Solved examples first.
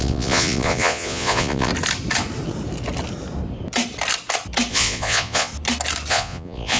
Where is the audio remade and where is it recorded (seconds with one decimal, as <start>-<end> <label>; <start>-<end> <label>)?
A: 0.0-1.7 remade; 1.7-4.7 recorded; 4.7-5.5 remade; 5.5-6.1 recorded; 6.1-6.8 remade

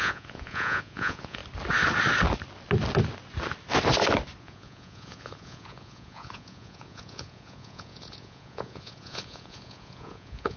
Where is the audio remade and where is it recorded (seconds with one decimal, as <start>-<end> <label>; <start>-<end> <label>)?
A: 0.0-1.4 remade; 1.4-4.4 recorded; 4.4-10.6 remade

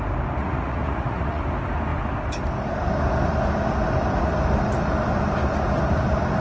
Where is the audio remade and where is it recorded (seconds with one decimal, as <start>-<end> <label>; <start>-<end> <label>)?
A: 0.0-0.4 recorded; 0.4-1.4 remade; 1.4-6.4 recorded